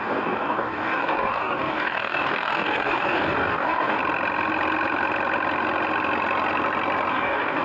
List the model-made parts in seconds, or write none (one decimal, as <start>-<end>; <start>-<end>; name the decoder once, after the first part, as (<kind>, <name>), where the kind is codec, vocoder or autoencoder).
0.0-4.0 (codec, DAC); 7.1-7.6

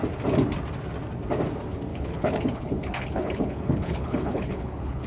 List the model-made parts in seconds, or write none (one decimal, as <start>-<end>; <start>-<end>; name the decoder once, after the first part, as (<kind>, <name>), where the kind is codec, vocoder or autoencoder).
1.9-5.1 (codec, HILCodec)

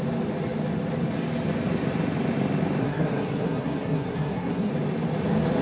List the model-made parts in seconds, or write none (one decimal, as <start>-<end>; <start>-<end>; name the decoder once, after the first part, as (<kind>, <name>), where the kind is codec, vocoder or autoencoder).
2.8-4.7 (codec, SNAC)

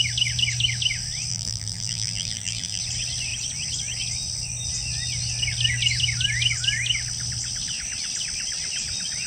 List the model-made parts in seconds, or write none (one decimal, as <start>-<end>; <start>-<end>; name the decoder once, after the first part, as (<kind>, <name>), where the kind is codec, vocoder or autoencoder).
1.3-2.8 (vocoder, BigVGAN v2)